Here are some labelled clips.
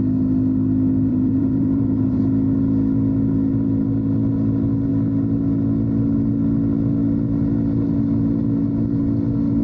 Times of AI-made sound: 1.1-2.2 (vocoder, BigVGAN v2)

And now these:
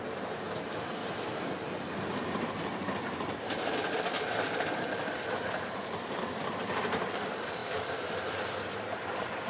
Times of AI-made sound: 0.0-9.5 (vocoder, BigVGAN v2)